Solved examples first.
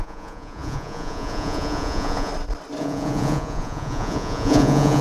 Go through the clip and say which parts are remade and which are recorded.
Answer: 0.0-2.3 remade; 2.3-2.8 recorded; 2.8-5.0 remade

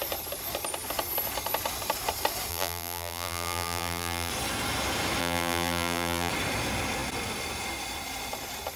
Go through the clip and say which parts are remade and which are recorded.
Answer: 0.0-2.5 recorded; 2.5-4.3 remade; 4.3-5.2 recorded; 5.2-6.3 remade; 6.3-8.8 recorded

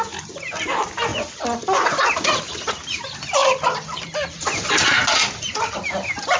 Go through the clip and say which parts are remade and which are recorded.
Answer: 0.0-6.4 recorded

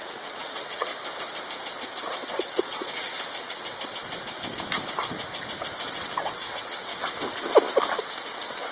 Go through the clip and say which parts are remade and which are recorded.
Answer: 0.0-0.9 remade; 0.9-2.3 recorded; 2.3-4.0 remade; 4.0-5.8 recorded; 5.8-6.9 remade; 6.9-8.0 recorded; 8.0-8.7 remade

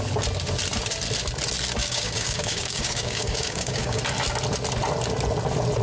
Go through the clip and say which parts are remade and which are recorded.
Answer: 0.0-1.8 recorded; 1.8-4.0 remade; 4.0-5.8 recorded

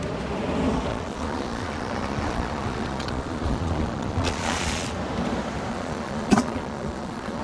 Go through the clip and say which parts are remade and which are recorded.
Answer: 0.0-0.9 recorded; 0.9-4.9 remade; 4.9-5.7 recorded; 5.7-7.4 remade

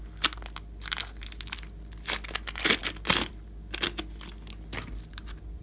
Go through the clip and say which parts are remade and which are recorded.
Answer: 0.0-5.6 recorded